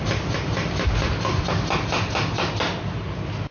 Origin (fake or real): real